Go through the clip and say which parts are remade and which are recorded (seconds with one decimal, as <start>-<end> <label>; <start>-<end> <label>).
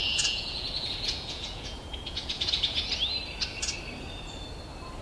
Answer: 0.0-2.9 remade; 2.9-5.0 recorded